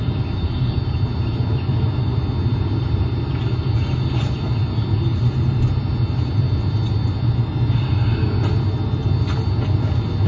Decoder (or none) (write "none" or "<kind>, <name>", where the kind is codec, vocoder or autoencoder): none